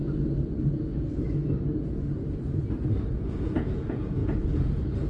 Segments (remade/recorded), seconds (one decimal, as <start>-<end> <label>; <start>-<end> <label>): 0.0-3.1 recorded; 3.1-5.1 remade